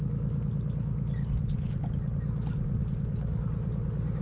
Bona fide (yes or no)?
yes